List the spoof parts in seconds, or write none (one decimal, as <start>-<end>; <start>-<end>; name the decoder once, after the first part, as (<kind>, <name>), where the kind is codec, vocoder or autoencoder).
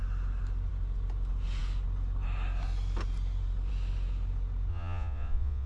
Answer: 4.7-5.7 (vocoder, Vocos)